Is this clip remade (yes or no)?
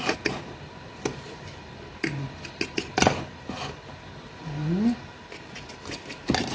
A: no